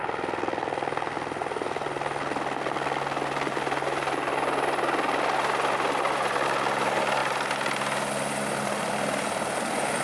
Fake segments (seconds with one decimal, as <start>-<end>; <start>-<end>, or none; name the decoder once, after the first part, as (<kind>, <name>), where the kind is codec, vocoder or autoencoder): none